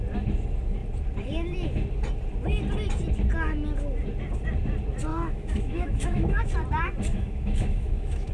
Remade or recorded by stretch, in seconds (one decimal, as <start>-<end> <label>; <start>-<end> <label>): 0.0-5.1 recorded; 5.1-6.5 remade; 6.5-7.1 recorded; 7.1-8.3 remade